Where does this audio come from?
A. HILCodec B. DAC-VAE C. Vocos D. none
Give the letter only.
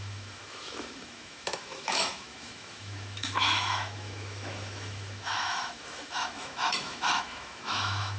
B